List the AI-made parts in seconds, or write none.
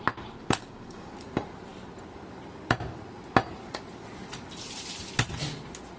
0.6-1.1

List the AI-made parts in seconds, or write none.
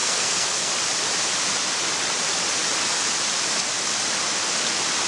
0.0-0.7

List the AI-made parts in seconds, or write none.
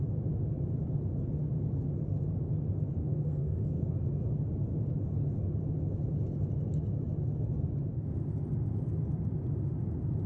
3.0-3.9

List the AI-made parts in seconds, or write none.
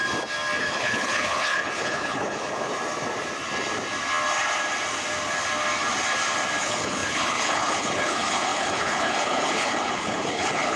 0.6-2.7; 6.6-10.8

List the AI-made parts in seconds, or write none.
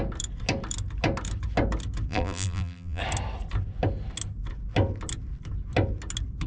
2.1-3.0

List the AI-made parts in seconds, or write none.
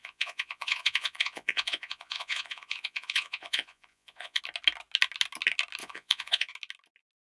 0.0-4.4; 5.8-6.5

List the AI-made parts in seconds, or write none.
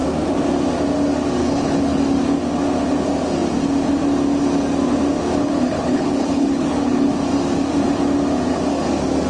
1.4-2.0; 5.4-7.1